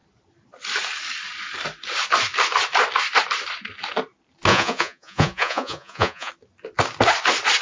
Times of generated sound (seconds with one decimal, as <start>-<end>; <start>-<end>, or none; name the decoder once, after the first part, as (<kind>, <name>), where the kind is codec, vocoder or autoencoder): 4.5-6.3 (vocoder, Vocos)